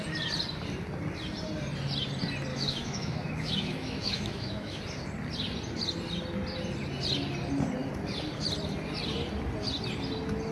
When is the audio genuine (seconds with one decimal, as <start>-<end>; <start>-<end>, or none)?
0.0-2.5; 4.8-10.5